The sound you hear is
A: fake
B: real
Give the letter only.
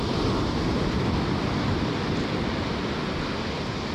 B